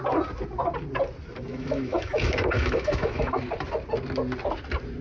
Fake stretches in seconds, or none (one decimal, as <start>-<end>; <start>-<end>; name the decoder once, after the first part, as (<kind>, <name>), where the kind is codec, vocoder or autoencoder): 1.5-3.4 (autoencoder, DAC-VAE)